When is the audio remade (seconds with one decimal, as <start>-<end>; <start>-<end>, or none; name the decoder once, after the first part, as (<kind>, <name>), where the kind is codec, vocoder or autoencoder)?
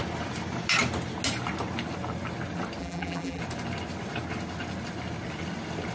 2.8-3.4 (vocoder, BigVGAN v2)